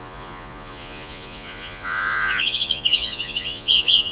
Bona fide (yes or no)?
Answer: no